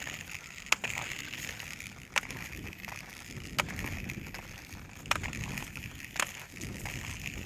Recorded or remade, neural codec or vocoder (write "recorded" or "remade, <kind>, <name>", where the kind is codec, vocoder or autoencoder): recorded